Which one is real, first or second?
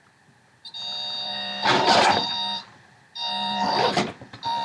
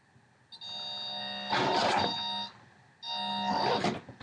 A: second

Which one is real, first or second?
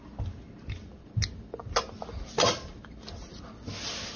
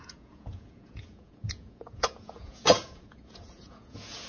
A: first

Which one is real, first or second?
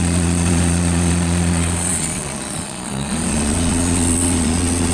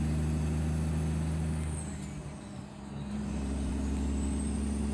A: second